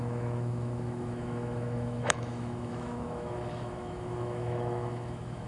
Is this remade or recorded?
remade